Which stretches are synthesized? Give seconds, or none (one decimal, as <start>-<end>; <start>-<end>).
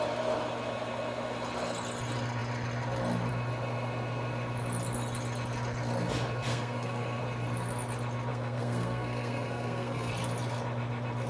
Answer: 6.5-7.2; 8.3-10.1